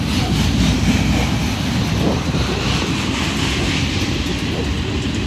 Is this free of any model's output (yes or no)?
yes